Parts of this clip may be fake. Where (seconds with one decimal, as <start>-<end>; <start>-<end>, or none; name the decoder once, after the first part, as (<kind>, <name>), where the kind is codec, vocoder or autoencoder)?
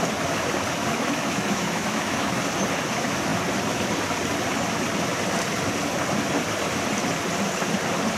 0.9-2.4 (autoencoder, DAC-VAE)